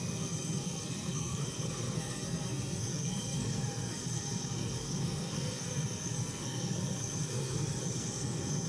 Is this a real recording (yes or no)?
no